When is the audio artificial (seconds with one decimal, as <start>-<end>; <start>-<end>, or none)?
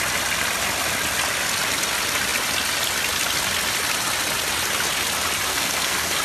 5.5-6.2